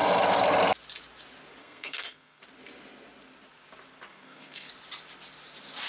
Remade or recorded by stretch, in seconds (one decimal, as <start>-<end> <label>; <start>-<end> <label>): 0.0-1.6 recorded; 1.6-2.4 remade; 2.4-4.1 recorded; 4.1-4.7 remade; 4.7-5.9 recorded